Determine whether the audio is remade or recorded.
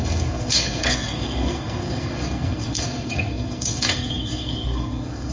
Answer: remade